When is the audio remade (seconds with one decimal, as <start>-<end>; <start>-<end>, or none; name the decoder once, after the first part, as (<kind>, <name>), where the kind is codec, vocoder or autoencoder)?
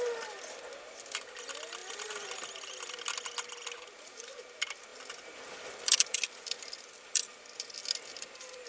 4.9-8.7 (vocoder, BigVGAN v2)